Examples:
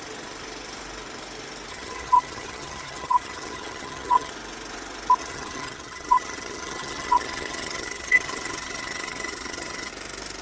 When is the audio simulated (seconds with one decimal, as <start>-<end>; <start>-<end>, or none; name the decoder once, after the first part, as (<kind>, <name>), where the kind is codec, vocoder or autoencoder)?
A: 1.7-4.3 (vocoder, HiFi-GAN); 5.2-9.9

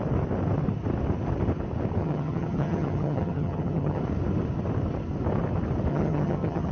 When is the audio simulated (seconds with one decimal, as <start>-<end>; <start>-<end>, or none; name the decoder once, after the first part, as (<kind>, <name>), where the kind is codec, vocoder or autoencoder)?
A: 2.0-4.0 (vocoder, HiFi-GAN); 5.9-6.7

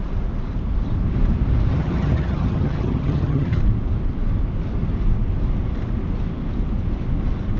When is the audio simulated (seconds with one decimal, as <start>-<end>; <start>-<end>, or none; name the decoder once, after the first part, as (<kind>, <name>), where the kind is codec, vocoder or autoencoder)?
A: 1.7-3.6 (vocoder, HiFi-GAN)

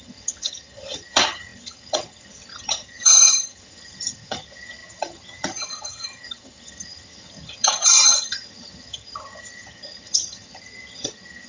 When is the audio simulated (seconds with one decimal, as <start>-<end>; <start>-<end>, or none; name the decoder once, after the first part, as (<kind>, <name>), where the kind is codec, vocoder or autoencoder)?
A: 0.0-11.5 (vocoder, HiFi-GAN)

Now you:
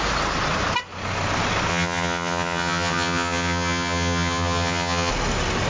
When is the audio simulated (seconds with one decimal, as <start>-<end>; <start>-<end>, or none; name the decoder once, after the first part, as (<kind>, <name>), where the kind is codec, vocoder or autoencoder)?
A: 1.7-5.1 (vocoder, HiFi-GAN)

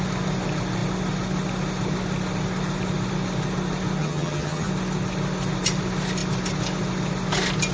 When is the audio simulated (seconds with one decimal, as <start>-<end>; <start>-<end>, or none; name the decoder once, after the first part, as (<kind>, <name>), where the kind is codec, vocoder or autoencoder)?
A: 4.0-4.7 (vocoder, HiFi-GAN)

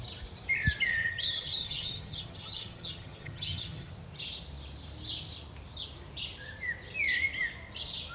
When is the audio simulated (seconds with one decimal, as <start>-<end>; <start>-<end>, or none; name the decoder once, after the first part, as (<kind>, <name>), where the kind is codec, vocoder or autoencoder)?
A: 0.9-3.9 (vocoder, HiFi-GAN)

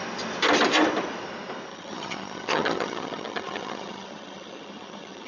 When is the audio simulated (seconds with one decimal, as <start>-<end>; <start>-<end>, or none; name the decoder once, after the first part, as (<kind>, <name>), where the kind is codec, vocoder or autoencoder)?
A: 1.7-5.3 (vocoder, HiFi-GAN)